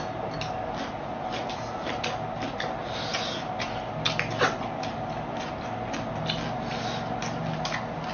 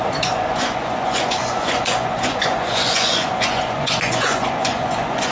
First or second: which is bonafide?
first